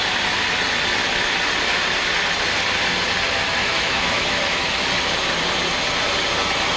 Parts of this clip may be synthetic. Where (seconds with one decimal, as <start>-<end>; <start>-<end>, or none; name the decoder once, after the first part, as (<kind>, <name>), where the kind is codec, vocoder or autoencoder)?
3.6-4.8 (autoencoder, DAC-VAE)